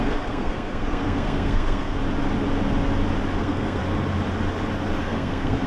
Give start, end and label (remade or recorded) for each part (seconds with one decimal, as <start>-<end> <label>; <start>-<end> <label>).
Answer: 0.0-2.0 remade; 2.0-3.4 recorded; 3.4-3.8 remade; 3.8-5.0 recorded; 5.0-5.7 remade